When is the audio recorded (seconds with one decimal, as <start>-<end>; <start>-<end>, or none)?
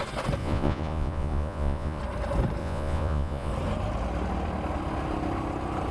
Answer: 0.0-0.4; 2.0-2.6; 3.5-5.9